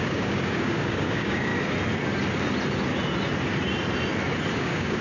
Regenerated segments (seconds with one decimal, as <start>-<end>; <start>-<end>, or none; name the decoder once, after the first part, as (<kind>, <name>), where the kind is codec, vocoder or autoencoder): 0.0-1.5 (codec, DAC); 4.5-5.0